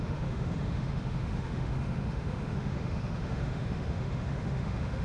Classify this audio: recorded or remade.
remade